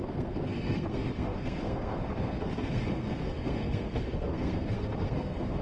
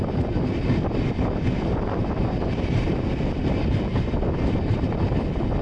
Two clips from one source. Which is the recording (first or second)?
second